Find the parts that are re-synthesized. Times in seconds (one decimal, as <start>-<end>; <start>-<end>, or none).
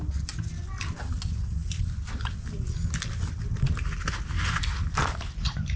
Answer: none